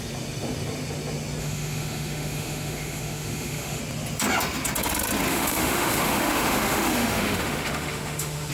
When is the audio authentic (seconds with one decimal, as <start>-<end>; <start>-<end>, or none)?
0.0-1.4; 3.8-5.3